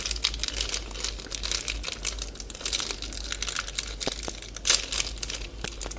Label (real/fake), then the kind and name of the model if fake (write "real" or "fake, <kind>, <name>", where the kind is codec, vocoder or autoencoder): real